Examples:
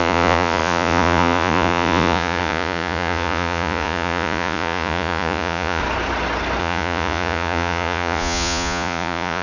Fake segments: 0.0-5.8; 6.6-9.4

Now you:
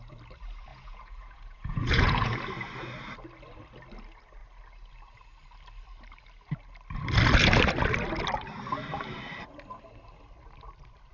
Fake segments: 0.7-2.4

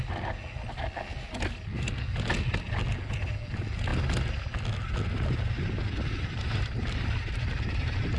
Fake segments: none

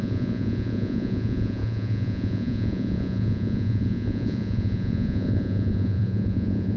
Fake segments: 0.0-6.8

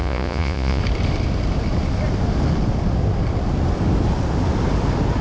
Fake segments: 0.0-0.8

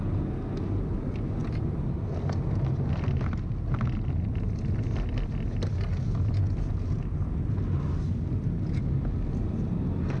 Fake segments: none